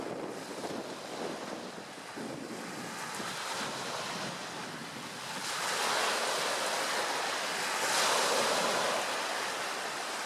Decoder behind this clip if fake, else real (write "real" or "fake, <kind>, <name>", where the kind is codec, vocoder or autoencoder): real